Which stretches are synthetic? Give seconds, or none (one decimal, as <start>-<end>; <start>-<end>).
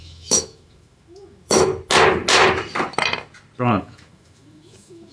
0.0-1.7; 3.6-5.1